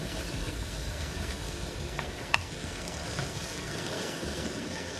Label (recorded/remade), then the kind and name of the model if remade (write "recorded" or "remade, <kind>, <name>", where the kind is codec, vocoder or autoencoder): remade, codec, SNAC